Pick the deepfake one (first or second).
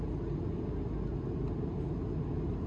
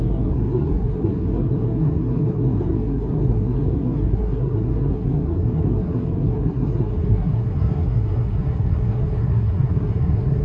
second